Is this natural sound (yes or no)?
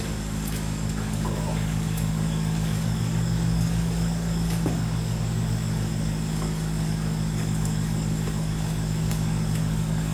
no